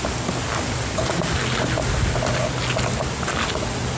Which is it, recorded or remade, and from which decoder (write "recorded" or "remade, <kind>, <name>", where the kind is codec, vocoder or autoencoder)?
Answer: recorded